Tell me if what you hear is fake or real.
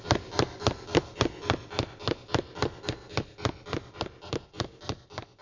real